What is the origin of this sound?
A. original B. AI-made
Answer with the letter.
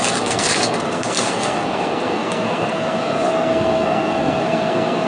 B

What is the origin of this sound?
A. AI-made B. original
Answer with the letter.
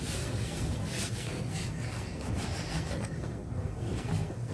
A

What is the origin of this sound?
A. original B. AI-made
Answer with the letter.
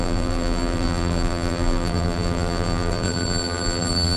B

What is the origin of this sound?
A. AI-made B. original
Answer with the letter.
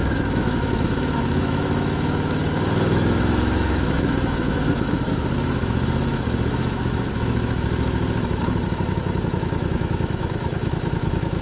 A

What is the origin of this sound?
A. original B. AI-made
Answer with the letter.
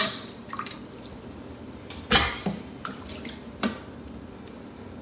B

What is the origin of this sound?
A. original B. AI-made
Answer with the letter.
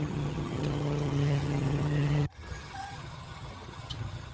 B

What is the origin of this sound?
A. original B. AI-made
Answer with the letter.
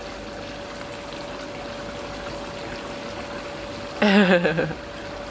A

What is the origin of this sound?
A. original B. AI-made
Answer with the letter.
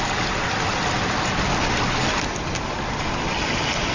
A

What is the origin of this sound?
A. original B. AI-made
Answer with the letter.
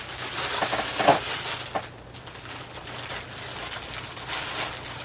A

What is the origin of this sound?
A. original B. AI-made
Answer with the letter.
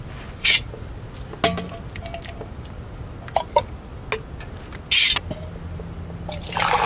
A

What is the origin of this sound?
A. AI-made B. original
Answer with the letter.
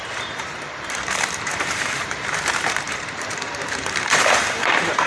A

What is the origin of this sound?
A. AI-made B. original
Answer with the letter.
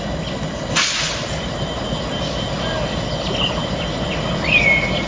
B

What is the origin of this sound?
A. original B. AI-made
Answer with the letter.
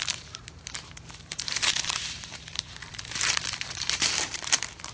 B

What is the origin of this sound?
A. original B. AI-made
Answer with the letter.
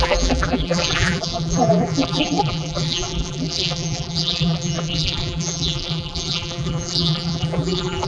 B